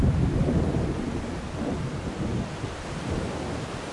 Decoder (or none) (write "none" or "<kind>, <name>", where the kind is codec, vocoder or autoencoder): none